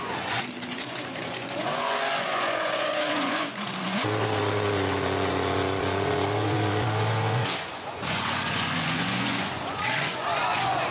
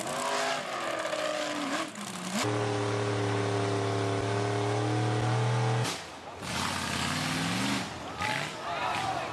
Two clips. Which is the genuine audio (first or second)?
second